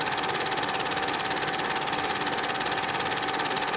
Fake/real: real